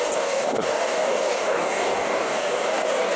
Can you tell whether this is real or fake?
fake